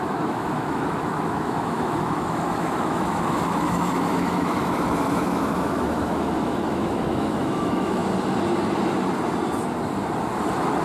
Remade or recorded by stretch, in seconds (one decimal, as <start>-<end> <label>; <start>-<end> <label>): 0.0-8.0 remade; 8.0-10.8 recorded